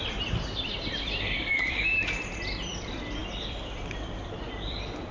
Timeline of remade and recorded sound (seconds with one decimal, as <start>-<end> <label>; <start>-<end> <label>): 0.0-0.9 recorded; 0.9-5.1 remade